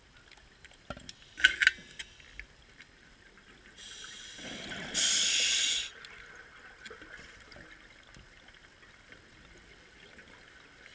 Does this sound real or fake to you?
real